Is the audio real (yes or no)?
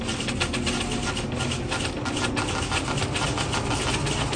yes